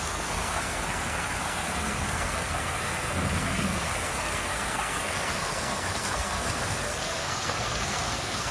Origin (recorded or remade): remade